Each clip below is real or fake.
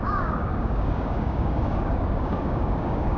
fake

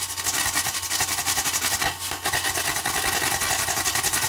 real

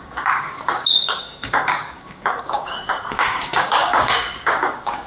fake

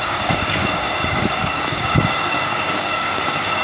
fake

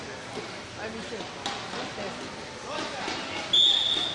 real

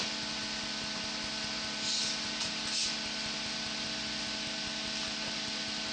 real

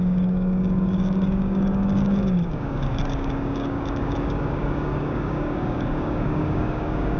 fake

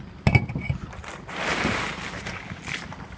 real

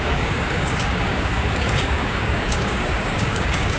fake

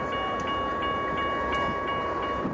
real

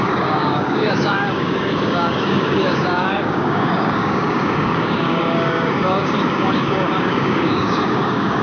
fake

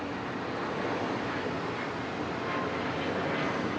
real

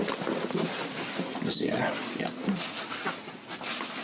real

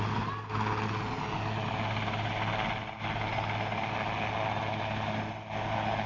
real